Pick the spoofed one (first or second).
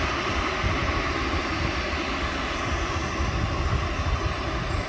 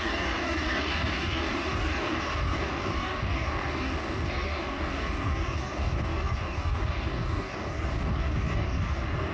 second